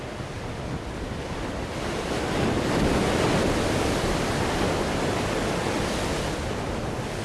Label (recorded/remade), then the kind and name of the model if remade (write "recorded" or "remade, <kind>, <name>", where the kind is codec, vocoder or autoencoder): recorded